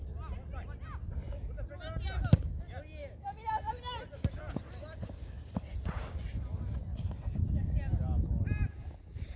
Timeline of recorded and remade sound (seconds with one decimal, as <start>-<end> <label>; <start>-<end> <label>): 0.0-9.4 recorded